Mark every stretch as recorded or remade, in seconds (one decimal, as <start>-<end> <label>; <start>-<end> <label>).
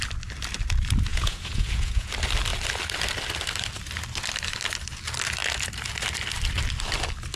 0.0-1.1 recorded; 1.1-2.1 remade; 2.1-7.4 recorded